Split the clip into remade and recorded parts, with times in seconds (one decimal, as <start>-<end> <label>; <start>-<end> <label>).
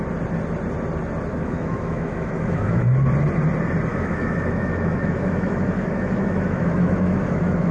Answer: 0.0-1.3 recorded; 1.3-2.8 remade; 2.8-3.9 recorded; 3.9-7.7 remade